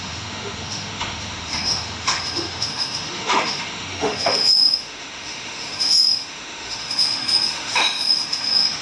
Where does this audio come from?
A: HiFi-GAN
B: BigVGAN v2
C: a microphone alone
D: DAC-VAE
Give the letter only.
D